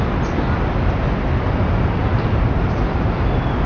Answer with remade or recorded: recorded